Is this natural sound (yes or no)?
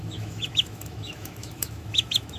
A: no